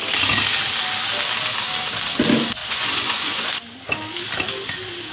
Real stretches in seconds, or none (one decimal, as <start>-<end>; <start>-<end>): 0.0-2.6; 3.6-5.1